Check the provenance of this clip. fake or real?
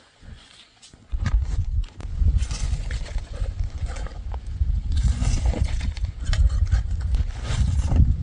fake